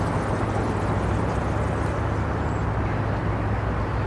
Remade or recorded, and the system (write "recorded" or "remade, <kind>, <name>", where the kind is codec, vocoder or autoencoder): recorded